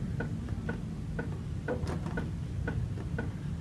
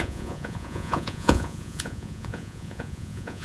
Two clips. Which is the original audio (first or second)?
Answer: first